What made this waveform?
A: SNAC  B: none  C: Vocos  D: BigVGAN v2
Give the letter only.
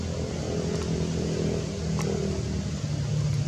B